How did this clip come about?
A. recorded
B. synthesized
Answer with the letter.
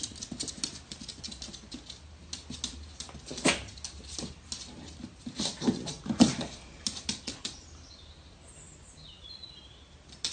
A